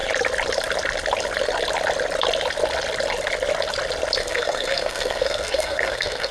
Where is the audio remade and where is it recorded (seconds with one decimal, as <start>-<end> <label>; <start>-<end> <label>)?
0.0-4.2 recorded; 4.2-6.3 remade

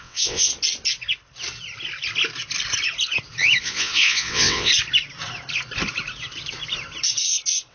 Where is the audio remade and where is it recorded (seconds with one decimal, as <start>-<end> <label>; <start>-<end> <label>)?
0.0-0.5 remade; 0.5-3.6 recorded; 3.6-4.7 remade; 4.7-7.7 recorded

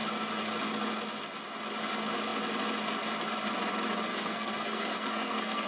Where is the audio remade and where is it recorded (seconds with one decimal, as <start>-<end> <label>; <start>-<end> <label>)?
0.0-4.1 recorded; 4.1-5.7 remade